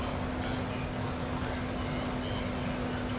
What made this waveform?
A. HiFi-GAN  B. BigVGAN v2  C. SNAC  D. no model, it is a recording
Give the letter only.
D